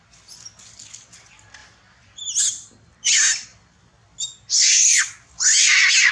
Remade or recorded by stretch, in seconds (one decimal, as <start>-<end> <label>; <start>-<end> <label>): 0.0-6.1 recorded